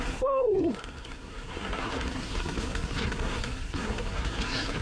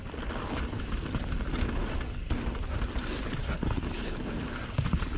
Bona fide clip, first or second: second